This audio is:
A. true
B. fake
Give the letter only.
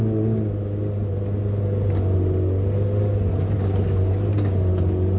A